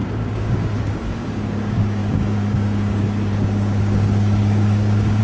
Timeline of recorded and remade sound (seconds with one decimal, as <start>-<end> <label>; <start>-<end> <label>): 0.0-5.2 remade